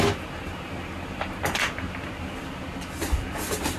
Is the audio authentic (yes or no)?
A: yes